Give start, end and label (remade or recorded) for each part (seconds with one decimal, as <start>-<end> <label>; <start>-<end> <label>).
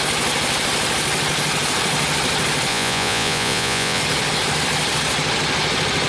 0.0-2.7 recorded; 2.7-4.0 remade; 4.0-6.1 recorded